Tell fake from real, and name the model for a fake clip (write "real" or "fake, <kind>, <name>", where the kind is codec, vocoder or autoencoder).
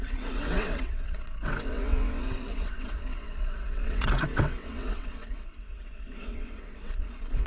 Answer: fake, vocoder, WaveNeXt